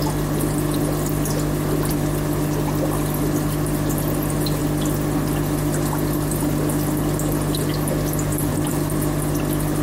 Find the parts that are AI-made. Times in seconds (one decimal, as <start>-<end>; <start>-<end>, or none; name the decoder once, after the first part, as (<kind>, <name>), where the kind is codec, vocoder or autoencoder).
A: none